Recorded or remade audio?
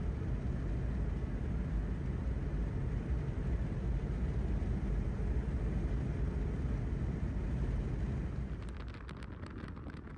recorded